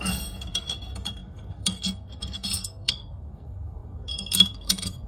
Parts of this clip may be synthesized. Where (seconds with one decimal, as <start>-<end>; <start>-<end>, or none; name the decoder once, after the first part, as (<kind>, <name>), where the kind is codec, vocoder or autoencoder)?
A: 0.0-5.1 (codec, SNAC)